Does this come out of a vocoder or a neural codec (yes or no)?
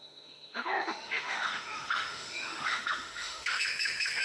yes